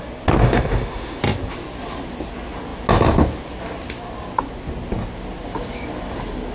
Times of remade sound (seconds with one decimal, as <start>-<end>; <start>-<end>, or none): 0.4-1.2